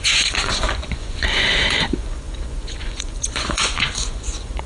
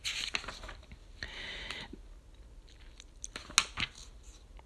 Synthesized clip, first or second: first